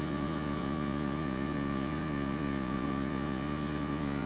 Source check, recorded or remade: remade